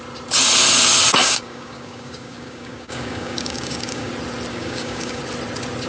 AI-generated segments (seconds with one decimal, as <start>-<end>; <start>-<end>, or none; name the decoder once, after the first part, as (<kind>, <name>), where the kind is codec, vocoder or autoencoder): 1.2-4.1 (codec, DAC); 4.5-5.2